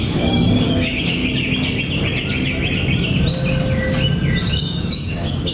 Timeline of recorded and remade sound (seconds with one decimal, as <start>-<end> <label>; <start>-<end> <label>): 0.0-1.2 remade; 1.2-4.5 recorded; 4.5-5.5 remade